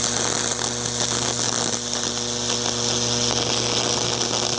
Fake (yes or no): no